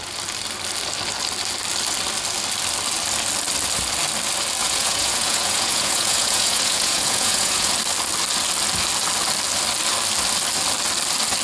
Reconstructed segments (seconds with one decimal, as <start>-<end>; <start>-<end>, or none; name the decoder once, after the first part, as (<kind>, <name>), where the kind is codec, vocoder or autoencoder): 4.6-7.7 (vocoder, Vocos)